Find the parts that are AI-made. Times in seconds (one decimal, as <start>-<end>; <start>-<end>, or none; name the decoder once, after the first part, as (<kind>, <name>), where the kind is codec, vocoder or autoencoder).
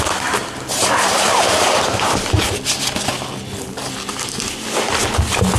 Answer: 0.4-3.8 (vocoder, BigVGAN v2)